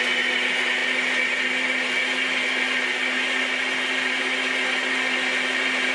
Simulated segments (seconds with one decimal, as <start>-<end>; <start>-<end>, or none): none